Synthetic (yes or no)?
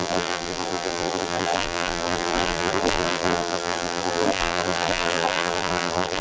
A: yes